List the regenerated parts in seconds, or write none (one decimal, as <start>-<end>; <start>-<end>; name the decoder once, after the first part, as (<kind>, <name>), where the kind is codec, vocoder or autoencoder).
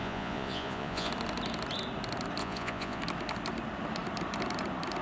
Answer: 0.0-1.1 (vocoder, Vocos); 2.4-3.0